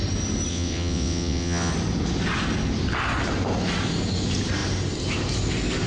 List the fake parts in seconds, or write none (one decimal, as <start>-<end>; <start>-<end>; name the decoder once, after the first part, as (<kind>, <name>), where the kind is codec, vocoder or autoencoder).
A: 0.5-1.7 (vocoder, WaveNeXt)